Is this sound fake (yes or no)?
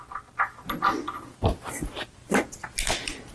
no